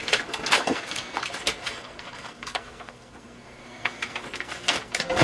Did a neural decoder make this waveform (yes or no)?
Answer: yes